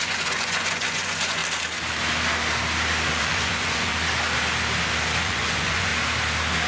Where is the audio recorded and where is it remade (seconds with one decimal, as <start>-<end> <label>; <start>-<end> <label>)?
0.0-1.4 remade; 1.4-3.1 recorded; 3.1-3.9 remade; 3.9-5.2 recorded; 5.2-5.9 remade; 5.9-6.7 recorded